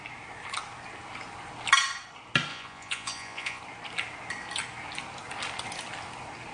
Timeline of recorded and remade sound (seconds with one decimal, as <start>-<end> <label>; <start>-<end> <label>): 0.0-2.5 recorded; 2.5-3.6 remade; 3.6-6.5 recorded